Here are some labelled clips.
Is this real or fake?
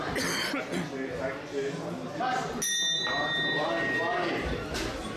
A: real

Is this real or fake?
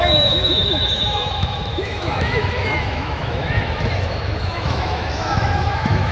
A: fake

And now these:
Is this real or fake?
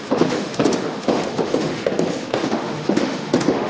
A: fake